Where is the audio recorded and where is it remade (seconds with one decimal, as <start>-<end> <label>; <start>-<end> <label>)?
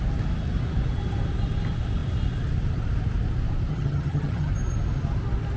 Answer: 0.0-3.7 recorded; 3.7-4.5 remade; 4.5-5.6 recorded